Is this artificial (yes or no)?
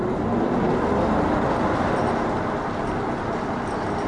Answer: no